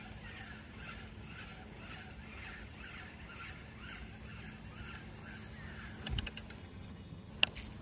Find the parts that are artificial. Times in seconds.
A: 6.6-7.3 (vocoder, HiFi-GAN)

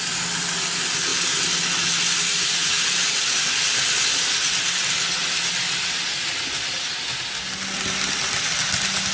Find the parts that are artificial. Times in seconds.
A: none

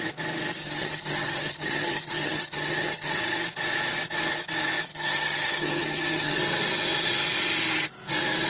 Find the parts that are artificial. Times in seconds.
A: 0.6-3.2 (vocoder, HiFi-GAN); 4.9-6.4

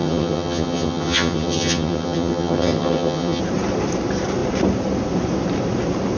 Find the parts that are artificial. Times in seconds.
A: 0.0-3.4 (vocoder, HiFi-GAN)

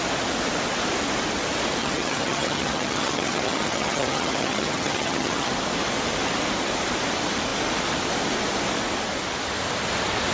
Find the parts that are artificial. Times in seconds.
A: 1.8-5.5 (vocoder, HiFi-GAN)

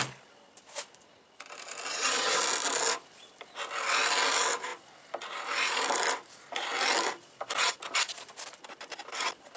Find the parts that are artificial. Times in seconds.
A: 1.9-2.4 (vocoder, HiFi-GAN)